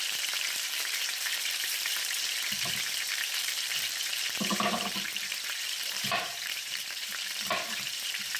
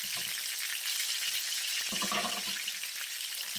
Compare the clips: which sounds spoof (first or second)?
first